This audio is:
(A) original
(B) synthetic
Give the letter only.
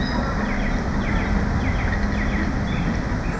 A